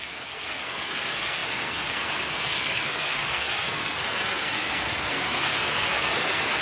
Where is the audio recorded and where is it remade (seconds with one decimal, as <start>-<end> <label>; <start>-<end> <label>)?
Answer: 0.0-6.6 remade